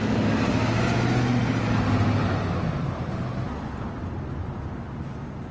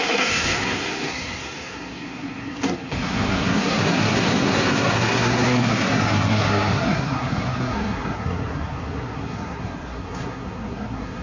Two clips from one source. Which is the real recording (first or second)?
first